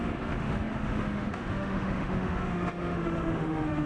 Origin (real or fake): fake